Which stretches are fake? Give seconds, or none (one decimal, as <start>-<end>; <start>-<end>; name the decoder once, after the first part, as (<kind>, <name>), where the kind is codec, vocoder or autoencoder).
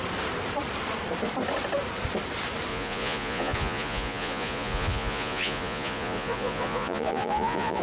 2.7-7.8 (vocoder, Vocos)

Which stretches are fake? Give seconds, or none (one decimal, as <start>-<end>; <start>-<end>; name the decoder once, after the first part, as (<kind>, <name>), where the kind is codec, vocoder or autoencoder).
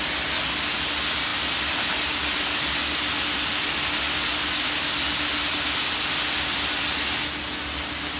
none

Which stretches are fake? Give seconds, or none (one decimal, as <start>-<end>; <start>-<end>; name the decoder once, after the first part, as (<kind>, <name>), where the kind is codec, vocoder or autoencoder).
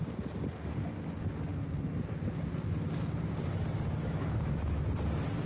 4.0-4.8 (autoencoder, DAC-VAE)